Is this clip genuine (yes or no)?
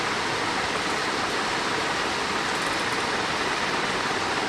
yes